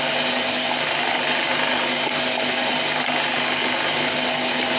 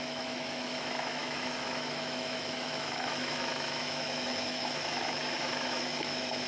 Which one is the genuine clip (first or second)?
first